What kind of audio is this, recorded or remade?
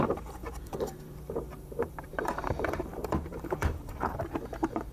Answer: remade